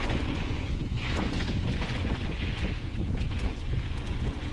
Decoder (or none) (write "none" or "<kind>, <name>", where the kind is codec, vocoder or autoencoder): vocoder, Vocos